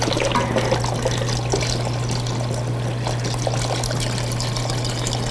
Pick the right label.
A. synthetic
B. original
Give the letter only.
B